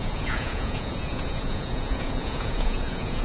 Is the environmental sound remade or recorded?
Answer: remade